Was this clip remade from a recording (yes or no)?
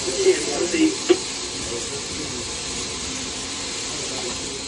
no